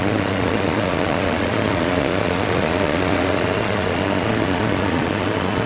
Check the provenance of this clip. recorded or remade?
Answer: remade